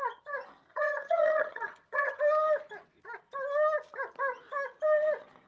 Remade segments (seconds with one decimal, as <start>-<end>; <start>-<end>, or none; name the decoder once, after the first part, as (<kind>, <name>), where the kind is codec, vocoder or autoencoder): 0.7-2.2 (vocoder, HiFi-GAN)